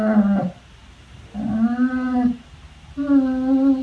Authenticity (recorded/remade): recorded